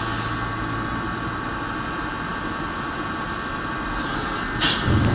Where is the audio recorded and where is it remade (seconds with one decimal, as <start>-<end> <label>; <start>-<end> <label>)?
0.0-2.3 recorded; 2.3-4.1 remade; 4.1-5.1 recorded